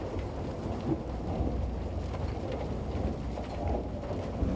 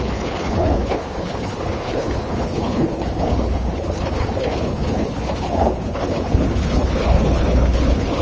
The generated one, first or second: second